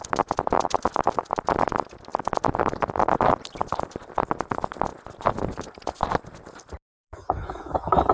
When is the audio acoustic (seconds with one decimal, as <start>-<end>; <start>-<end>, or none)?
0.0-7.0